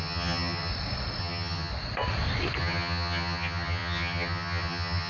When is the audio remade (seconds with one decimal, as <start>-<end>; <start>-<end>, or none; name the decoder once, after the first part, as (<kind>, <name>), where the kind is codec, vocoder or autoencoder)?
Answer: 0.0-0.7 (vocoder, HiFi-GAN); 1.2-1.7; 2.6-5.1